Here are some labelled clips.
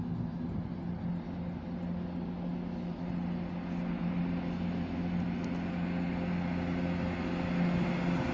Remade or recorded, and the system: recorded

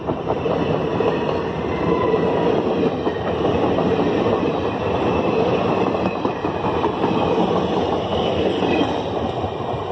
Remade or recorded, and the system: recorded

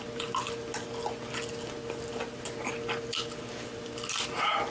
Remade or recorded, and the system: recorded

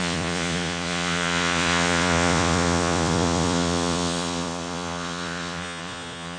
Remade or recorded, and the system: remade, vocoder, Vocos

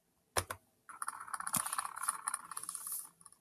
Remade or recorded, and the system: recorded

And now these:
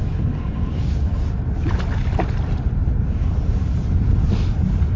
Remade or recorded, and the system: recorded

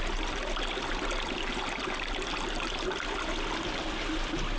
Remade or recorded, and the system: recorded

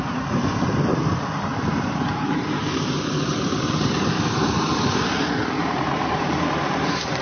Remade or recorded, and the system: remade, vocoder, BigVGAN v2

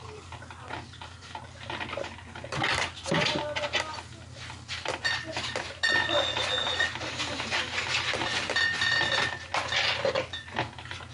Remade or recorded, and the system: recorded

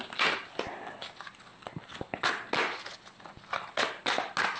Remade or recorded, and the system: recorded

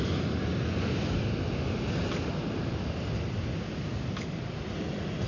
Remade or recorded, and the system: recorded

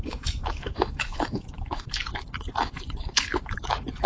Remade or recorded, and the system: remade, autoencoder, DAC-VAE